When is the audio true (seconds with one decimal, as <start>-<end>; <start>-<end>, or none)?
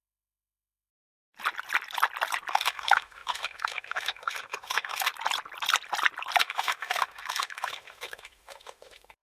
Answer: 0.9-2.5; 5.1-6.4